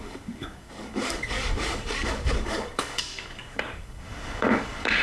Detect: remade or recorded remade